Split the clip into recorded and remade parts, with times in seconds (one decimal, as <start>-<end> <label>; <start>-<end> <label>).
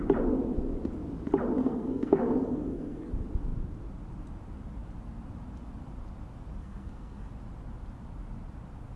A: 0.0-1.6 recorded; 1.6-3.1 remade; 3.1-6.6 recorded; 6.6-7.3 remade; 7.3-9.0 recorded